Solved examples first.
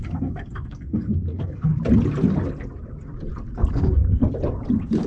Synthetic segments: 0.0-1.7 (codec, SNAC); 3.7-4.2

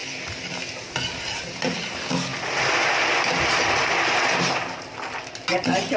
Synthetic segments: none

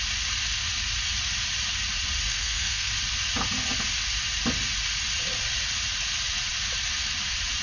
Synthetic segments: 2.3-2.9 (codec, SNAC)

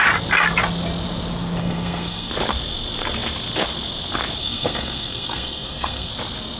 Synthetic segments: 1.6-2.3 (codec, SNAC); 4.4-6.1

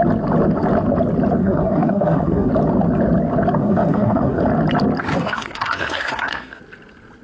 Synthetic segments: 1.4-2.5 (codec, SNAC); 3.6-4.4; 5.1-6.6

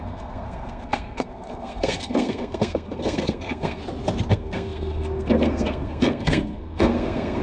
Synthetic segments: 0.0-3.8 (codec, SNAC); 4.3-7.4

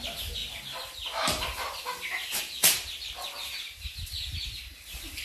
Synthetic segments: none

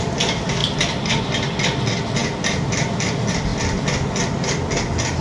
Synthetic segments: none